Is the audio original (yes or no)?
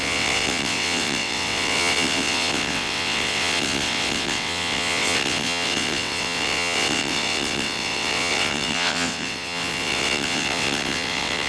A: no